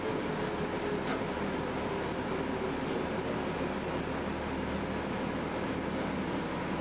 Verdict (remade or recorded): recorded